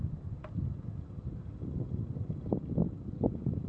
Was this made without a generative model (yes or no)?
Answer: yes